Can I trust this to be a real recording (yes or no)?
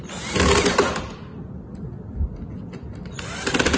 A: yes